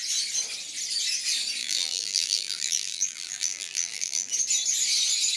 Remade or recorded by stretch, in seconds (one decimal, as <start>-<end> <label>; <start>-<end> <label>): 0.0-1.6 recorded; 1.6-4.3 remade; 4.3-5.4 recorded